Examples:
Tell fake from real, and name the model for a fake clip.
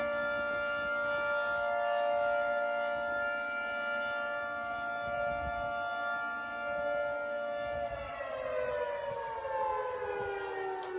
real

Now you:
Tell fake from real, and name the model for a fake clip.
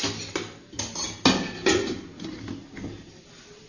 real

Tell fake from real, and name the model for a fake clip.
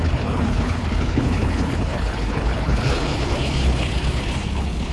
fake, codec, HILCodec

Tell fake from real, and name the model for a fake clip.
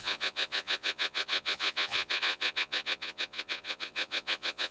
fake, vocoder, Vocos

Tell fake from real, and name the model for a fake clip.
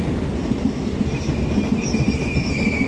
real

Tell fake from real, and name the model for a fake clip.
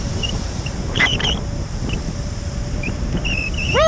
fake, vocoder, BigVGAN v2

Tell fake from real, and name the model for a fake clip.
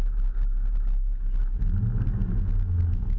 real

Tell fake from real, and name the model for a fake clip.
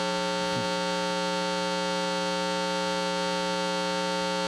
real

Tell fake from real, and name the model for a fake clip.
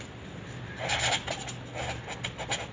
real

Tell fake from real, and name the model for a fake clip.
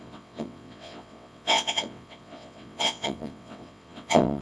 fake, vocoder, WaveNeXt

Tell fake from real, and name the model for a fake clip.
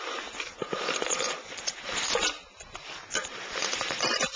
real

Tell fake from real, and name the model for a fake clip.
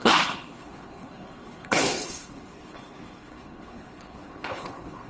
fake, codec, HILCodec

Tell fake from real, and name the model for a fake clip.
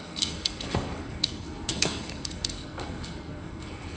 fake, codec, SNAC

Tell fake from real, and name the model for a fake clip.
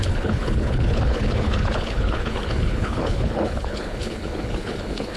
fake, codec, HILCodec